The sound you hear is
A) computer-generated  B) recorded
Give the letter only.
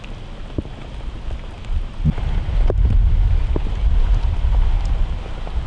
B